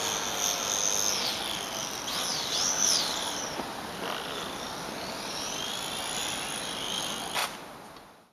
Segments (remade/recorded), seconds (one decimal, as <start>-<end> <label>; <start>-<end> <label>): 0.0-2.3 recorded; 2.3-5.7 remade; 5.7-8.3 recorded

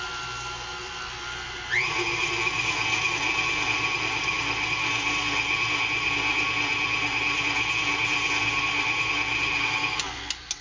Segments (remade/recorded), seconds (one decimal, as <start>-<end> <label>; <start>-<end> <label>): 0.0-10.6 recorded

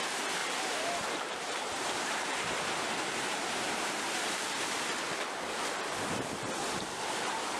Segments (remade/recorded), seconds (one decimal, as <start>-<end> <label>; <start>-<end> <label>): 0.0-0.4 recorded; 0.4-4.0 remade; 4.0-7.6 recorded

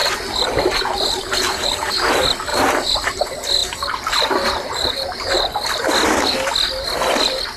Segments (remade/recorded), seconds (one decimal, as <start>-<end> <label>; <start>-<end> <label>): 0.0-1.9 remade; 1.9-2.5 recorded; 2.5-3.2 remade; 3.2-3.6 recorded; 3.6-5.5 remade; 5.5-7.6 recorded